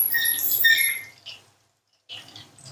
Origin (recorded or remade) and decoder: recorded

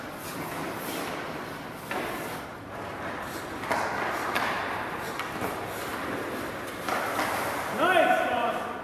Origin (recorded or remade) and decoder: recorded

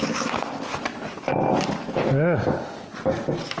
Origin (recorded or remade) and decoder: recorded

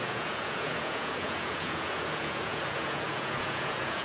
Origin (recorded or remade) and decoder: remade, vocoder, Vocos